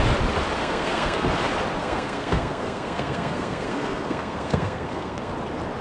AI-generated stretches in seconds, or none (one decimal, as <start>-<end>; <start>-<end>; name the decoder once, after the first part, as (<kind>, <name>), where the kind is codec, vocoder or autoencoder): 0.6-1.3 (codec, SNAC); 1.8-5.3